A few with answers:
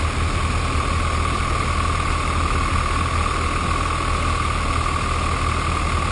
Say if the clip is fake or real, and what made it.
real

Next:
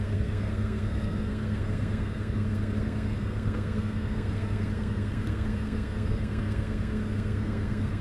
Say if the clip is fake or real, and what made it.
fake, codec, SNAC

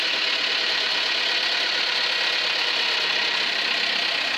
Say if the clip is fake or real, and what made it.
real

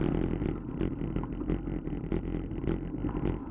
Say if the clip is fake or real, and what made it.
real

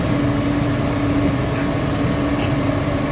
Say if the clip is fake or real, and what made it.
real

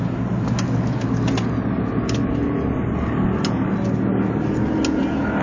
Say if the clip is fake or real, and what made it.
real